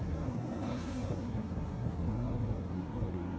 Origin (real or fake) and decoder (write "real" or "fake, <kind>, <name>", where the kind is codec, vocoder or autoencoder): fake, codec, SNAC